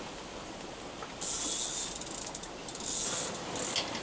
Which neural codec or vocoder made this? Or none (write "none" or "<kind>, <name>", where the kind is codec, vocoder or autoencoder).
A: none